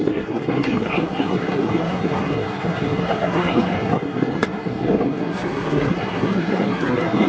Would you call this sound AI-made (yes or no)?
yes